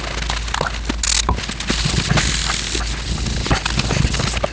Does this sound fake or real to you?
real